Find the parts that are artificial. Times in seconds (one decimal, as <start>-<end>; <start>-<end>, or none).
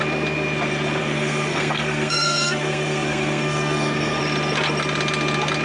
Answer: 1.0-4.2